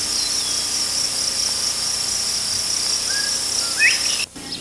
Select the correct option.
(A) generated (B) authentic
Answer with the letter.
B